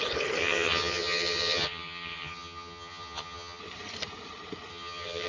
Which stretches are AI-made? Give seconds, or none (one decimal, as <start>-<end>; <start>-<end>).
0.4-3.6; 4.7-5.3